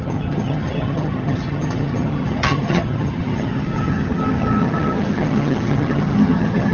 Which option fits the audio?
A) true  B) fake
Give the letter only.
B